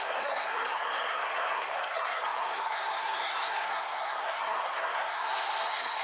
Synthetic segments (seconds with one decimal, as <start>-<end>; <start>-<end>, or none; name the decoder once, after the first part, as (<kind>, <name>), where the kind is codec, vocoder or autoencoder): 0.0-6.0 (codec, SNAC)